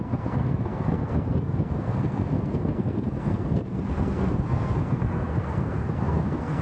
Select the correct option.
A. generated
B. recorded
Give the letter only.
A